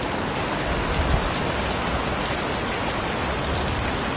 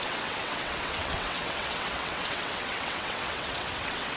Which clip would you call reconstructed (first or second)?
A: second